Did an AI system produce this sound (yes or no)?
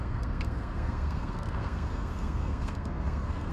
yes